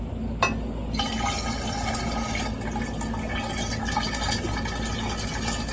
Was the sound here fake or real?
real